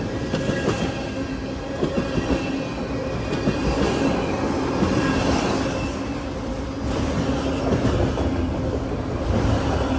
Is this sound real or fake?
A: real